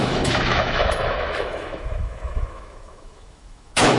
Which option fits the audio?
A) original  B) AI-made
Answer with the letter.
B